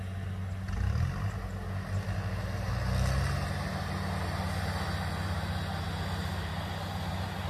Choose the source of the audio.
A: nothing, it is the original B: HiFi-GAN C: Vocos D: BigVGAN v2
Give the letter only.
A